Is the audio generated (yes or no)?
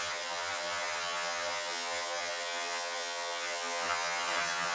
yes